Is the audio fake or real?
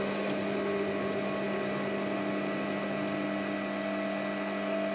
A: real